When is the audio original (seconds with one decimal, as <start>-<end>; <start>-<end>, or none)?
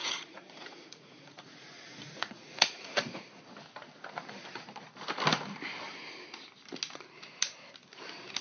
3.4-8.4